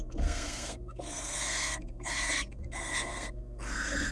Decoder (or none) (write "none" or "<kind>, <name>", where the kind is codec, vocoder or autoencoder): codec, SNAC